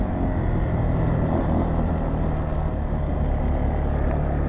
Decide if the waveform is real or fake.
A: real